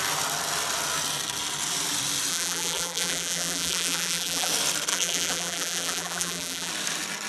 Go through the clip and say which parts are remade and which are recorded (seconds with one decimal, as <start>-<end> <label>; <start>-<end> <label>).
0.0-2.3 recorded; 2.3-4.5 remade; 4.5-4.9 recorded; 4.9-6.7 remade; 6.7-7.3 recorded